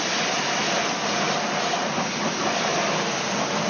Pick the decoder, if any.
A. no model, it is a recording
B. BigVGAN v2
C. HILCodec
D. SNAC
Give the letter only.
A